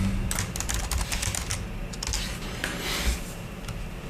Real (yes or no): yes